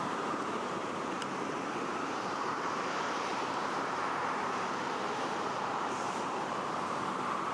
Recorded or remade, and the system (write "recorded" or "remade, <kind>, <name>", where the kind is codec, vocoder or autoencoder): remade, vocoder, BigVGAN v2